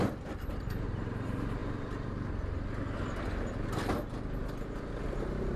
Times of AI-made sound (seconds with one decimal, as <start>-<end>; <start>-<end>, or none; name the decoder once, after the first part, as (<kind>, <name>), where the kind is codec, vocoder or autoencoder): 0.0-1.6 (vocoder, BigVGAN v2); 5.0-5.6